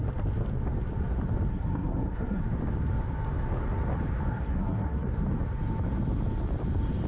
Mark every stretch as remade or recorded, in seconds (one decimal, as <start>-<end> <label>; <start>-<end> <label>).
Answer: 0.0-1.5 recorded; 1.5-2.4 remade; 2.4-4.3 recorded; 4.3-5.2 remade; 5.2-7.1 recorded